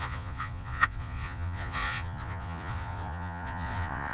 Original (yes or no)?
no